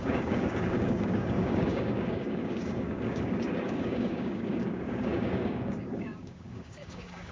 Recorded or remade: remade